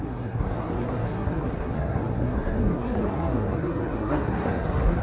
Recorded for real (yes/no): no